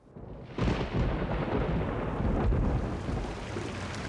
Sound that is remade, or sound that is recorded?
recorded